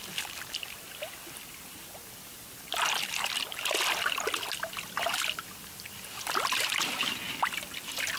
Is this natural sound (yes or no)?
yes